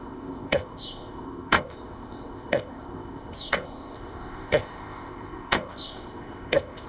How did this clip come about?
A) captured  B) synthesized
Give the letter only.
B